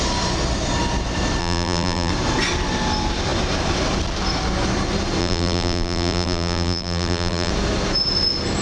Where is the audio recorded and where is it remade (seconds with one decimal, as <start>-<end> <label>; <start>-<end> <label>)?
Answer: 0.0-1.4 recorded; 1.4-2.1 remade; 2.1-5.2 recorded; 5.2-7.5 remade; 7.5-8.6 recorded